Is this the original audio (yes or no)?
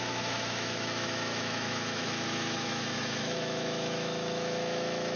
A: no